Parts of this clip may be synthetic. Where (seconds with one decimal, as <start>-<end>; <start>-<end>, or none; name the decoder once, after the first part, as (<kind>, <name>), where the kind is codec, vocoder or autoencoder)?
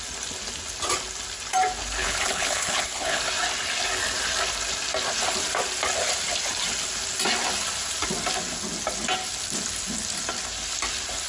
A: 2.0-3.2 (codec, HILCodec)